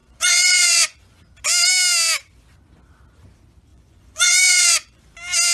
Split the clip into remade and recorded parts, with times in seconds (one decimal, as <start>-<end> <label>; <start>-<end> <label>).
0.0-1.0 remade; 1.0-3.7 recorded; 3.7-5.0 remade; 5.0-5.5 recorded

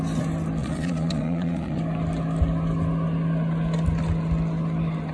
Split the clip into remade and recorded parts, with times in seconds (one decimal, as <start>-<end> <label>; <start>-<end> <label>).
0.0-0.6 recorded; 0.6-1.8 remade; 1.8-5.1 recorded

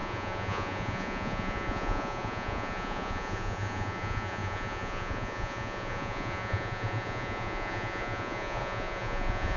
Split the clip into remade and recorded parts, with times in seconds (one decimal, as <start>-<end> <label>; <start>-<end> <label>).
0.0-9.6 remade